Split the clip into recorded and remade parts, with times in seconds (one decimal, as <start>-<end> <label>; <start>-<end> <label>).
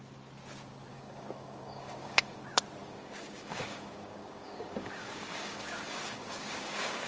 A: 0.0-0.9 recorded; 0.9-2.4 remade; 2.4-2.8 recorded; 2.8-7.1 remade